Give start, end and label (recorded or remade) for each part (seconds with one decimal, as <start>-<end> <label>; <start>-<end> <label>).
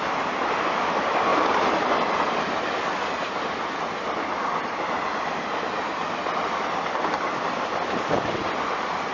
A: 0.0-1.3 recorded; 1.3-3.7 remade; 3.7-9.1 recorded